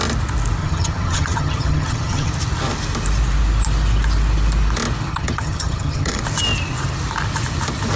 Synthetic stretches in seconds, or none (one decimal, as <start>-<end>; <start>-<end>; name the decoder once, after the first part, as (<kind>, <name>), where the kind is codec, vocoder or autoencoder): 0.6-2.3 (vocoder, HiFi-GAN); 5.1-6.2